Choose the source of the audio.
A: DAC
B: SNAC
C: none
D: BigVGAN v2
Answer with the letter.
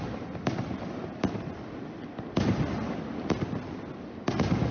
C